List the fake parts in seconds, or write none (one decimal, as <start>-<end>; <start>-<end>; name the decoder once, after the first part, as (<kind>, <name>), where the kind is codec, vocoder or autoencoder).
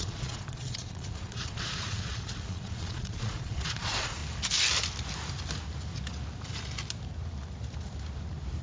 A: 0.0-4.2 (vocoder, Vocos)